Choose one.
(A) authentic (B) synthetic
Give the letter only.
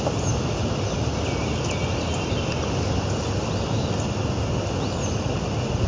A